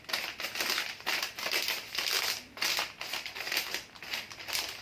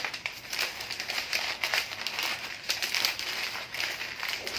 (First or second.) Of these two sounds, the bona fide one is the first